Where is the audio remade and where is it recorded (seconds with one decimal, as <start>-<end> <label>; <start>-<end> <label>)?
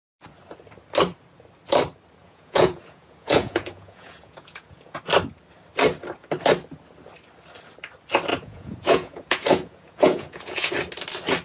0.0-2.2 recorded; 2.2-5.0 remade; 5.0-8.3 recorded; 8.3-10.7 remade; 10.7-11.4 recorded